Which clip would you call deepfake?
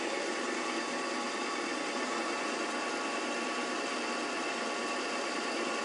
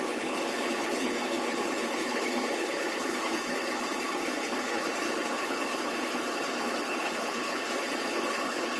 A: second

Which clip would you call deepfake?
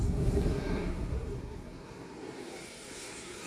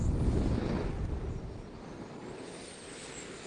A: first